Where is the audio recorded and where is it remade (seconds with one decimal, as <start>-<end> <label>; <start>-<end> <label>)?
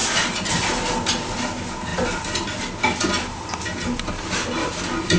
0.0-5.2 recorded